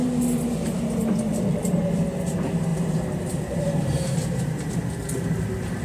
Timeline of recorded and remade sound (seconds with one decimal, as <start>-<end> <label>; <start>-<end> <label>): 0.0-1.3 recorded; 1.3-1.8 remade; 1.8-2.7 recorded; 2.7-4.7 remade; 4.7-5.8 recorded